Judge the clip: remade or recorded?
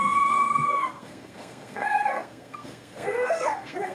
remade